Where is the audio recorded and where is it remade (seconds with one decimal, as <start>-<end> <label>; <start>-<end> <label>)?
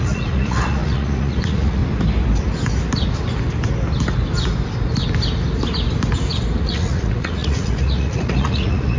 0.0-1.8 remade; 1.8-6.6 recorded; 6.6-9.0 remade